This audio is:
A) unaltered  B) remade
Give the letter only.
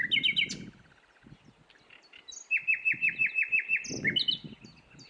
A